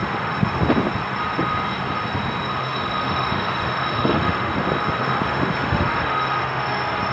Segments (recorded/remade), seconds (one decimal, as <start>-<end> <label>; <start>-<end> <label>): 0.0-0.6 remade; 0.6-2.6 recorded; 2.6-4.5 remade; 4.5-5.0 recorded; 5.0-6.6 remade; 6.6-7.1 recorded